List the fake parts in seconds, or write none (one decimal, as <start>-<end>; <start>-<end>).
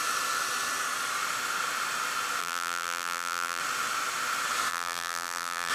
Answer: 2.4-3.6; 4.7-5.7